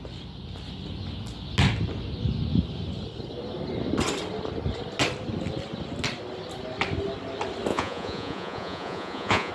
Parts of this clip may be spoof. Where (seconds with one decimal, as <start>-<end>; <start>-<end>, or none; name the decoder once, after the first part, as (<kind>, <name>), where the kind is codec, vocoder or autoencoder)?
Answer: 7.7-9.5 (vocoder, Vocos)